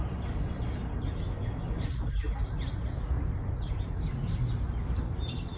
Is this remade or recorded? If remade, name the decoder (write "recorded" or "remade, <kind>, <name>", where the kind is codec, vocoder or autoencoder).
recorded